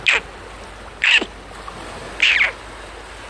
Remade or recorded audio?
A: recorded